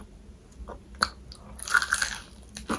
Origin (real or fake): real